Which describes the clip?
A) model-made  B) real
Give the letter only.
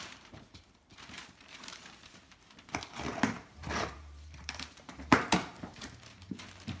A